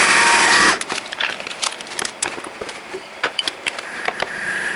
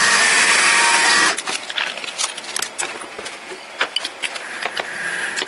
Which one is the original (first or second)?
second